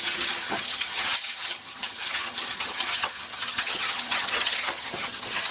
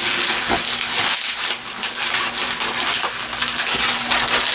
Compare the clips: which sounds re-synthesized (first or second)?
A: first